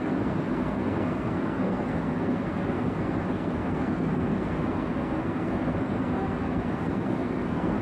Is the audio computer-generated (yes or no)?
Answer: yes